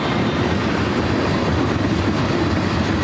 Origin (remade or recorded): recorded